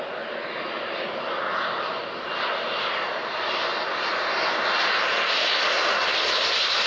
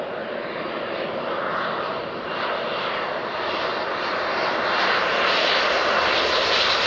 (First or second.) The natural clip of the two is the first